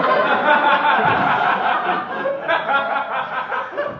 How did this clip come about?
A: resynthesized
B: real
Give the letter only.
B